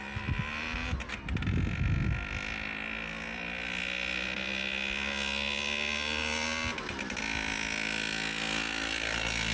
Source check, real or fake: real